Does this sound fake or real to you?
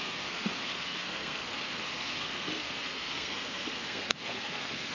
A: fake